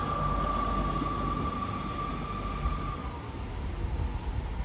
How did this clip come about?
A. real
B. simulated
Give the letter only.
A